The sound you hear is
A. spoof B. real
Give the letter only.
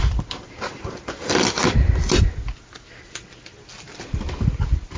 B